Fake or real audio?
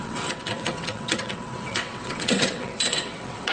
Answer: fake